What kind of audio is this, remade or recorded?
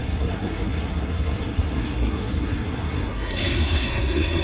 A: remade